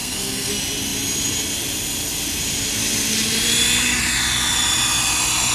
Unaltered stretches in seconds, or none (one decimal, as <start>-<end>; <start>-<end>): 0.5-5.5